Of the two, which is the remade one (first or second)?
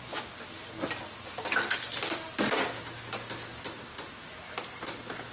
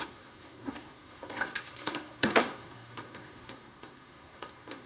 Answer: second